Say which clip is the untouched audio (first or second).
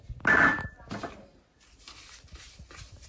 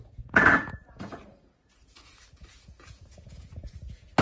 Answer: first